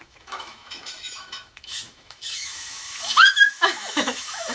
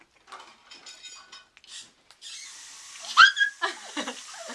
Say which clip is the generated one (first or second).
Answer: first